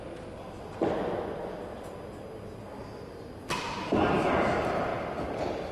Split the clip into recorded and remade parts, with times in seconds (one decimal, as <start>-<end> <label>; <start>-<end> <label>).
0.0-5.7 recorded

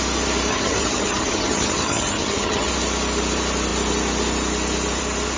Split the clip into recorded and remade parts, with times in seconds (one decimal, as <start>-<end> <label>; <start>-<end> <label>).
0.0-0.5 recorded; 0.5-2.7 remade; 2.7-5.4 recorded

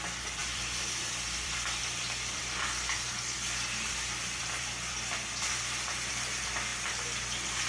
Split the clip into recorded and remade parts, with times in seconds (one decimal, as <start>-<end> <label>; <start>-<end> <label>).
0.0-0.4 recorded; 0.4-2.4 remade; 2.4-4.4 recorded; 4.4-6.1 remade; 6.1-7.7 recorded

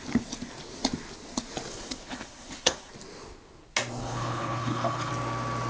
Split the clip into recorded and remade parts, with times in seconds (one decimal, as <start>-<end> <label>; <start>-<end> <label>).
0.0-1.7 recorded; 1.7-2.9 remade; 2.9-4.0 recorded; 4.0-5.1 remade; 5.1-5.7 recorded